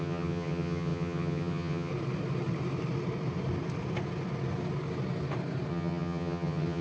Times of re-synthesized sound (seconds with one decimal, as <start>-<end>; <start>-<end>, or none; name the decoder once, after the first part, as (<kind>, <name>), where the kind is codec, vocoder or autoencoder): 0.0-1.9 (vocoder, HiFi-GAN); 5.7-6.8